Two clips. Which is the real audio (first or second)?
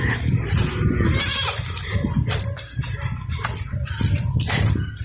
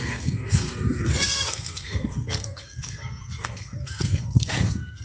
first